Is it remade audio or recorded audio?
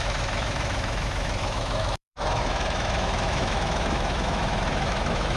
remade